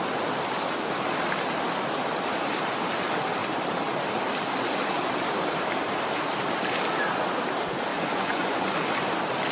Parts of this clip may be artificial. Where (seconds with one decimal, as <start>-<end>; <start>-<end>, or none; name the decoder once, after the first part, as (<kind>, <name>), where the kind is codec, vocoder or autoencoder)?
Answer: 7.9-8.7 (vocoder, Vocos)